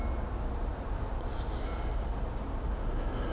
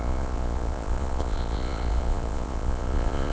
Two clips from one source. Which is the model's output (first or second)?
second